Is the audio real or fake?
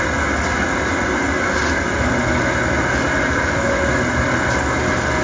real